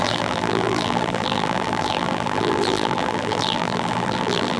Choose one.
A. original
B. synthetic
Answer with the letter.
B